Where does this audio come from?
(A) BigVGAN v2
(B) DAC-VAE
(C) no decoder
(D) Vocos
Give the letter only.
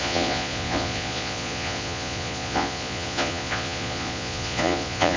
D